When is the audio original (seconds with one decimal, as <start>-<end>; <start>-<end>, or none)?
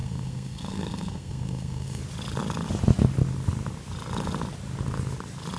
2.0-5.6